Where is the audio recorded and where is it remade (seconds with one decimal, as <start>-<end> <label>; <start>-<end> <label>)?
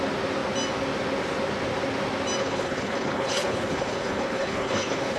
0.0-2.4 recorded; 2.4-5.2 remade